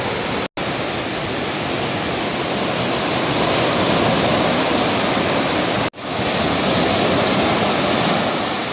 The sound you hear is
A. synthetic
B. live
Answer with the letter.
B